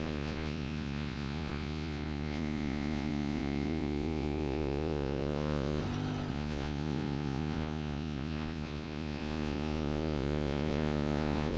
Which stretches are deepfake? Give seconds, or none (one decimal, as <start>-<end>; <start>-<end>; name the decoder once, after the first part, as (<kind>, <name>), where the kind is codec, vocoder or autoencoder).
0.0-5.8 (vocoder, Vocos); 6.3-11.6